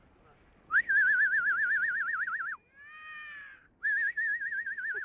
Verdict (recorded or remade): remade